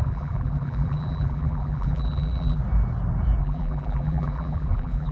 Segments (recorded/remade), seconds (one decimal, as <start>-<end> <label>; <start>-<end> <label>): 0.0-2.6 remade; 2.6-3.4 recorded; 3.4-5.1 remade